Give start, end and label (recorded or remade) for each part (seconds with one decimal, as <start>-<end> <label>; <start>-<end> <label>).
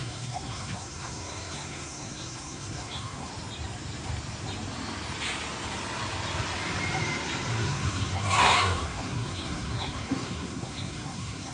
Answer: 0.0-3.3 remade; 3.3-7.5 recorded; 7.5-11.5 remade